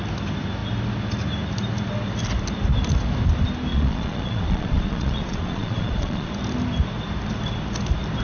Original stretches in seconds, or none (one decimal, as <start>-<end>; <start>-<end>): 0.0-3.7; 6.3-8.2